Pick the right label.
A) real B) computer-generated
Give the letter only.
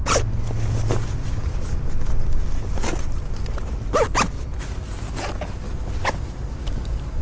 A